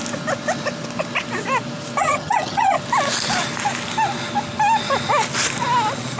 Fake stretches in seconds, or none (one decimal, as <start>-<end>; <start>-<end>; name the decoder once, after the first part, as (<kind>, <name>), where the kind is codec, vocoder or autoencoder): 2.0-2.8 (vocoder, HiFi-GAN)